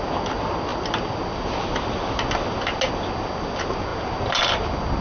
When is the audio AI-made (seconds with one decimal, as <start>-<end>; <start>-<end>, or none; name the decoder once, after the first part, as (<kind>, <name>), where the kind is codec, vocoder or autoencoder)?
none